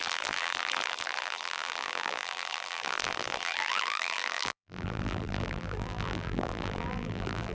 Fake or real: fake